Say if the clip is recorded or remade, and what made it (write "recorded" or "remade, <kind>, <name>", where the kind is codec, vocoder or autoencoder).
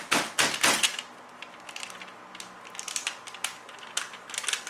recorded